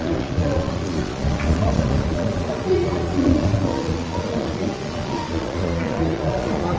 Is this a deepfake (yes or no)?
yes